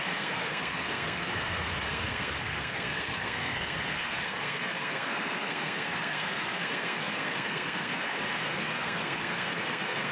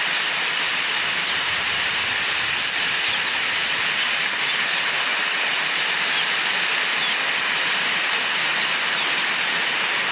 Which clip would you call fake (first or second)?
first